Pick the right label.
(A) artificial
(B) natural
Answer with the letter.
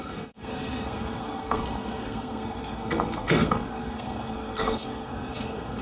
A